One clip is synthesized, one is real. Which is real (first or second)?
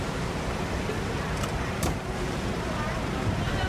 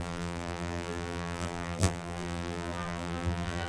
first